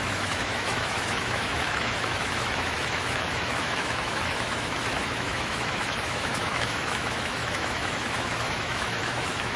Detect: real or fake fake